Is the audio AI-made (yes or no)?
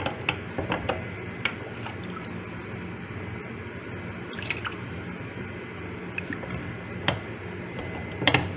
yes